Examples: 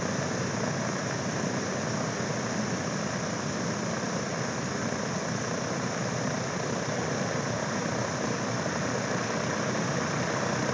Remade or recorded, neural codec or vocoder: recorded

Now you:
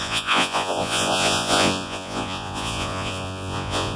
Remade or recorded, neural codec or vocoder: remade, vocoder, Vocos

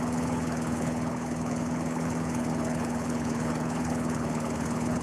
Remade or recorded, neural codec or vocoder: remade, codec, HILCodec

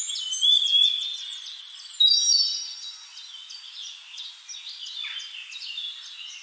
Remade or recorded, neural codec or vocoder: recorded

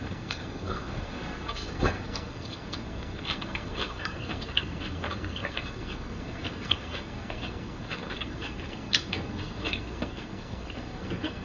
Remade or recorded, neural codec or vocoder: remade, codec, SNAC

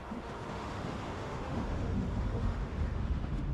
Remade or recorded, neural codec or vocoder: remade, autoencoder, DAC-VAE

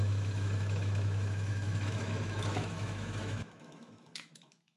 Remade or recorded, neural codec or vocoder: remade, autoencoder, DAC-VAE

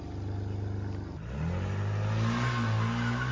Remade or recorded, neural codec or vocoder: recorded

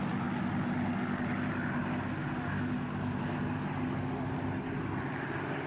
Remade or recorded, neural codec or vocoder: recorded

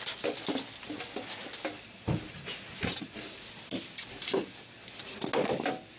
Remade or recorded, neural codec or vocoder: recorded